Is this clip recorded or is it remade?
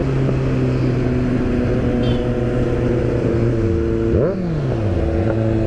recorded